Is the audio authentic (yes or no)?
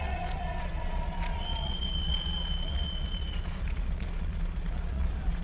no